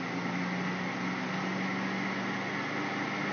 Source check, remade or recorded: recorded